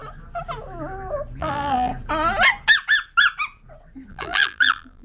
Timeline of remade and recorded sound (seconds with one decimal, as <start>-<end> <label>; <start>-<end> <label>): 0.0-1.4 recorded; 1.4-1.9 remade; 1.9-4.1 recorded; 4.1-5.0 remade